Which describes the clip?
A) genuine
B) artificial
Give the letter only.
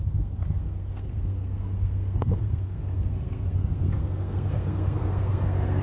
B